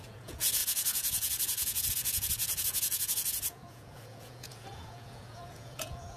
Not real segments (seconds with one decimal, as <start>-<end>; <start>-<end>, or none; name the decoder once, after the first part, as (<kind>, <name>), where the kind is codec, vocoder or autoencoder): 0.0-6.2 (vocoder, Vocos)